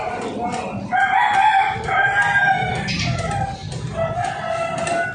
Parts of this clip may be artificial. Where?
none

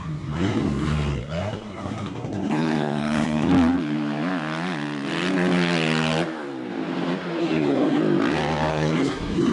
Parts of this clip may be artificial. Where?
0.0-3.5 (codec, SNAC); 7.4-8.0; 8.7-9.5

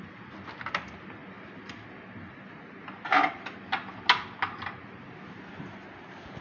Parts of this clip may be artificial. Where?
none

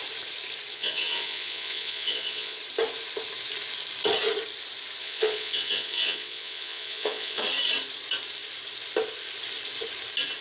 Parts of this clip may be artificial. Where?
0.7-2.6 (vocoder, Vocos); 5.0-7.4